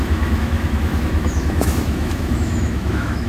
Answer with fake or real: fake